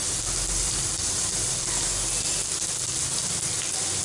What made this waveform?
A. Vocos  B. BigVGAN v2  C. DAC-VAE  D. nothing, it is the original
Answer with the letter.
D